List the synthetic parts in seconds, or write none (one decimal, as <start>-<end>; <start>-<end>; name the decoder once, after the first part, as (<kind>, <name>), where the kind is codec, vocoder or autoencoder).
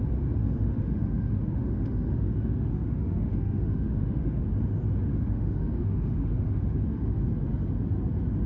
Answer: 0.4-4.4 (autoencoder, DAC-VAE); 5.1-7.2